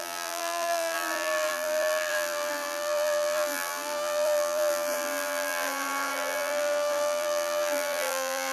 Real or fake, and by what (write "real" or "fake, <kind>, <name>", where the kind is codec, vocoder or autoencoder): fake, vocoder, BigVGAN v2